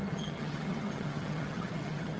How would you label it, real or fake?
fake